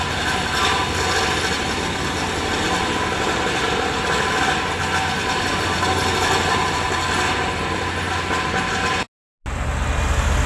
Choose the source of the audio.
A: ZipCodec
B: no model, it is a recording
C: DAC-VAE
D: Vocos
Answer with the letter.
B